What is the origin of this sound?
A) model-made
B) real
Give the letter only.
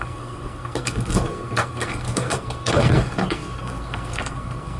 A